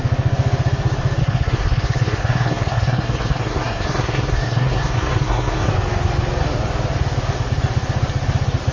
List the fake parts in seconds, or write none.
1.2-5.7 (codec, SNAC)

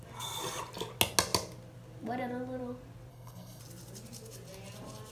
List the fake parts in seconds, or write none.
3.1-3.6 (codec, SNAC)

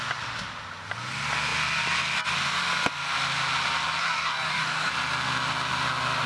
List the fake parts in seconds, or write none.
4.0-4.9 (codec, DAC)

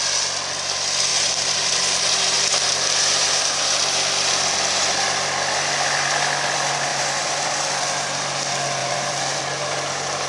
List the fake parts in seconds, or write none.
1.1-3.6 (vocoder, BigVGAN v2); 6.9-7.4; 8.8-9.4

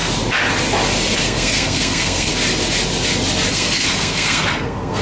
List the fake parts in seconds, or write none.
1.2-2.3 (codec, SNAC); 3.5-5.0

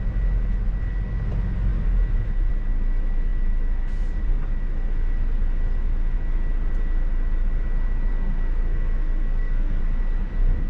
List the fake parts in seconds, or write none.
8.1-9.8 (codec, SNAC)